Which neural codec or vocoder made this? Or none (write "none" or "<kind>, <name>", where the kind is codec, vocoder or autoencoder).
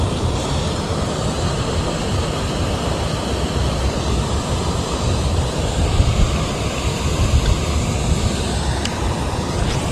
none